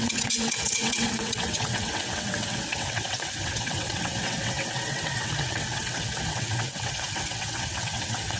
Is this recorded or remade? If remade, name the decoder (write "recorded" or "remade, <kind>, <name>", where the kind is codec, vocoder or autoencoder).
remade, vocoder, WaveNeXt